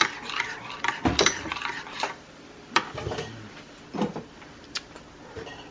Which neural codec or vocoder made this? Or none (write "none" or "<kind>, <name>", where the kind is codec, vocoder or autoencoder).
vocoder, BigVGAN v2